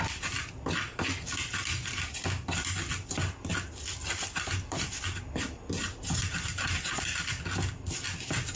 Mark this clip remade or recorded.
recorded